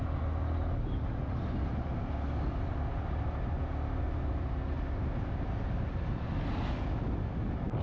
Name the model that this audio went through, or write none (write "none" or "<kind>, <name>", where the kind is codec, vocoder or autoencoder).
none